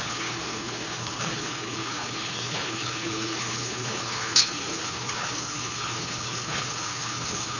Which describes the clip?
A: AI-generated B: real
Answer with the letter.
A